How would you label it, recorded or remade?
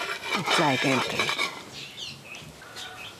recorded